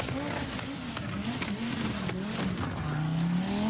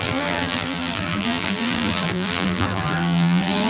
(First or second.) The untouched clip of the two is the first